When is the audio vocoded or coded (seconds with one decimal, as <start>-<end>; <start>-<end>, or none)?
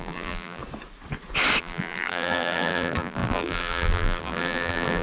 0.0-0.6; 1.6-5.0